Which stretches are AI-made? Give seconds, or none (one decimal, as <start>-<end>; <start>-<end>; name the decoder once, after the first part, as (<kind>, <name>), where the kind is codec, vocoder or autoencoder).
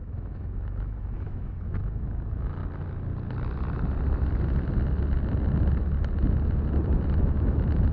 0.0-2.6 (autoencoder, DAC-VAE); 7.2-7.9